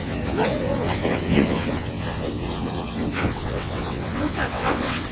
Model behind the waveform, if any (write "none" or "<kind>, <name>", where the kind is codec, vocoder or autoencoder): vocoder, WaveNeXt